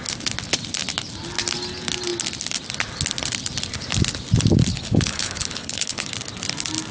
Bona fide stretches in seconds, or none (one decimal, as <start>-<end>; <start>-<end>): 0.0-4.7; 6.1-6.9